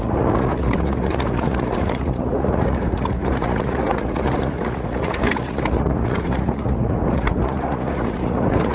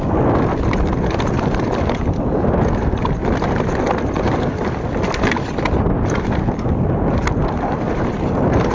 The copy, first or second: first